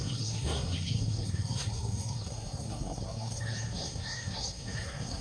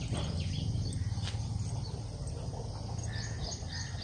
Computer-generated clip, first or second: first